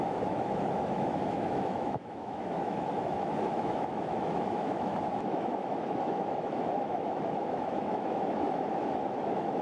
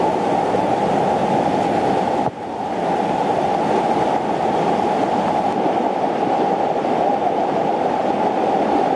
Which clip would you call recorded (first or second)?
second